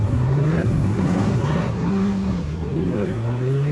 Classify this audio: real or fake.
fake